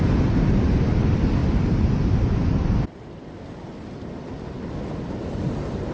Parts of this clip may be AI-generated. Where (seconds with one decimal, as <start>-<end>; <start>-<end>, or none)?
none